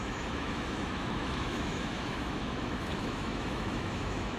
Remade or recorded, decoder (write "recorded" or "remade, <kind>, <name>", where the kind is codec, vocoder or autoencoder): remade, autoencoder, DAC-VAE